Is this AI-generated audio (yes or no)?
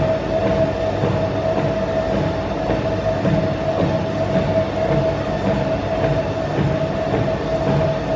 no